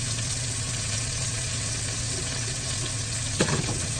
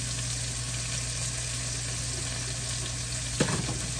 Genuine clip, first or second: second